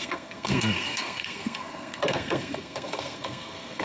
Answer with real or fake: fake